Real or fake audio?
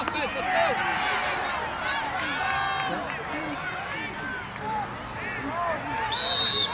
real